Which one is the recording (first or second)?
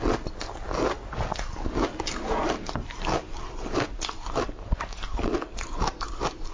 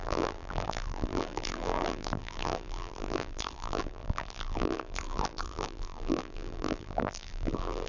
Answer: first